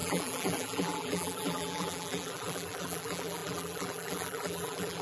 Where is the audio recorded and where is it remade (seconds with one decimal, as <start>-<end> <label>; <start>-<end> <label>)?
0.0-5.0 remade